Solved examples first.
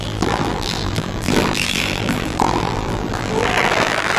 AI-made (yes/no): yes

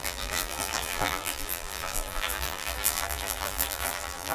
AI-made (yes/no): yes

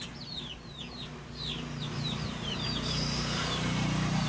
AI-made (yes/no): yes